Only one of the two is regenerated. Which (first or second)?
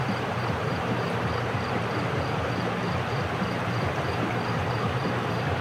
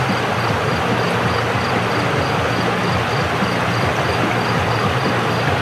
first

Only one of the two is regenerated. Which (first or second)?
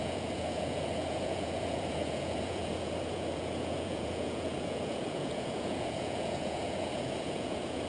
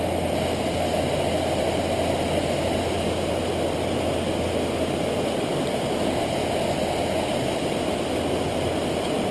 first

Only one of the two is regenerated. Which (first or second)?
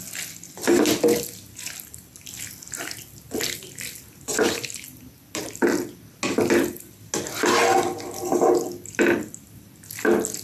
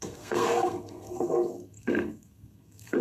second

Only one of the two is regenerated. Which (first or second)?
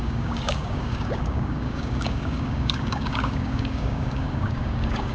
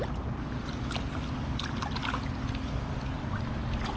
first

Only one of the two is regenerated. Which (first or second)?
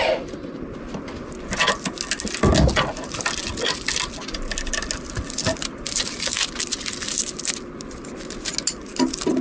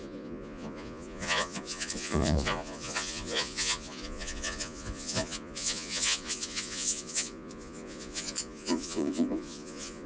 second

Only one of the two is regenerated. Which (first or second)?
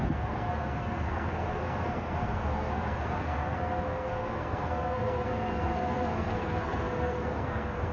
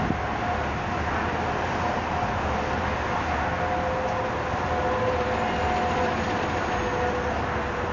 first